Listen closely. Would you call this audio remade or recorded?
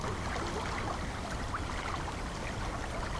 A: recorded